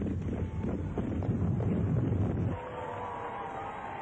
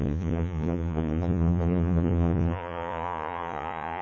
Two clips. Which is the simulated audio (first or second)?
second